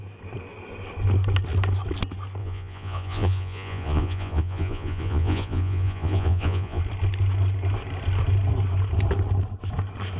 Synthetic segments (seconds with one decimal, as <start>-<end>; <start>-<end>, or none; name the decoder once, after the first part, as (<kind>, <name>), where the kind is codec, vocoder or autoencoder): 2.4-6.8 (vocoder, Vocos)